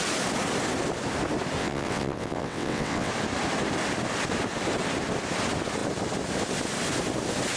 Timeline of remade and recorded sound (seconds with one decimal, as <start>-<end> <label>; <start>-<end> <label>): 0.0-1.6 recorded; 1.6-3.1 remade; 3.1-7.6 recorded